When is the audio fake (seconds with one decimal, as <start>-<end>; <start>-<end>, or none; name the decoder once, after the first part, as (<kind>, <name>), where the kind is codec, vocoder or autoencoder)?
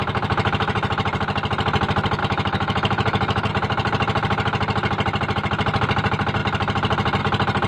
2.2-3.5 (autoencoder, DAC-VAE)